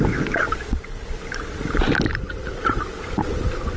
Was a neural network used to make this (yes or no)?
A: yes